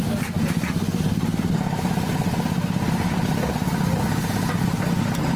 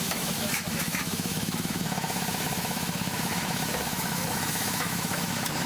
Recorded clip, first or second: first